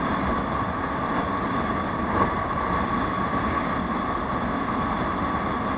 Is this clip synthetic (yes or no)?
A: no